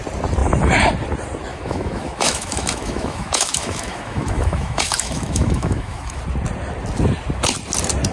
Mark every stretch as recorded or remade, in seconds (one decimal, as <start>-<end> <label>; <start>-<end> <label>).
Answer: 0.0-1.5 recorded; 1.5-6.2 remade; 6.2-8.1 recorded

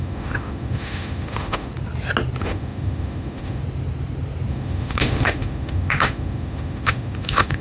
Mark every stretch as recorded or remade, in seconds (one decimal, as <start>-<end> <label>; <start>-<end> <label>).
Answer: 0.0-1.7 remade; 1.7-2.4 recorded; 2.4-3.6 remade; 3.6-4.5 recorded; 4.5-7.6 remade

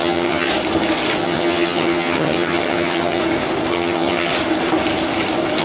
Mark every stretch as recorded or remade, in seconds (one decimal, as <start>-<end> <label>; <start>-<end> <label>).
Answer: 0.0-0.5 remade; 0.5-1.2 recorded; 1.2-3.2 remade; 3.2-3.7 recorded; 3.7-4.3 remade; 4.3-5.6 recorded

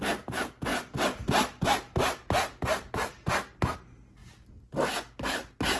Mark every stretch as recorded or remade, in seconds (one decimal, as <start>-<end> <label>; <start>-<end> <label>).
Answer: 0.0-5.8 recorded

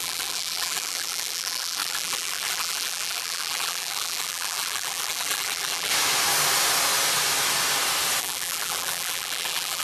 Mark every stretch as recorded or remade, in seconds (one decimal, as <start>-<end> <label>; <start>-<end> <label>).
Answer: 0.0-5.9 remade; 5.9-8.2 recorded; 8.2-9.8 remade

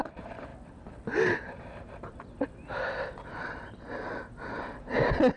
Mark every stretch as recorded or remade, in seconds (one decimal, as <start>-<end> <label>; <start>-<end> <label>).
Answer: 0.0-5.4 recorded